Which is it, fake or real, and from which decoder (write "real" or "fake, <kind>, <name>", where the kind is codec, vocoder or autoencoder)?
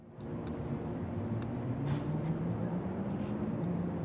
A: real